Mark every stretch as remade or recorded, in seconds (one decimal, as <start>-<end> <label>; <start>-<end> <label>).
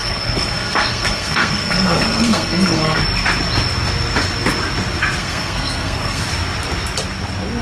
0.0-3.0 remade; 3.0-5.2 recorded; 5.2-6.2 remade; 6.2-7.6 recorded